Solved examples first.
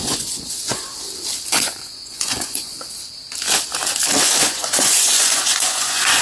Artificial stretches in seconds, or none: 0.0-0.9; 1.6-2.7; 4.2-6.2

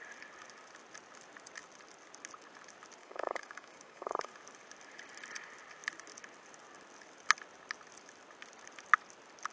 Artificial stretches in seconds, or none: 3.0-4.3

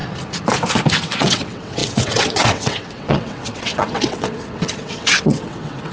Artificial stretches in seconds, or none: 0.9-5.9